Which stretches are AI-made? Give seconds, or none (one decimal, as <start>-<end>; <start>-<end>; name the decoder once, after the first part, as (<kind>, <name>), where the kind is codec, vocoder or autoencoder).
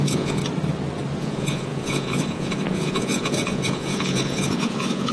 0.0-0.4 (vocoder, Vocos); 1.2-5.1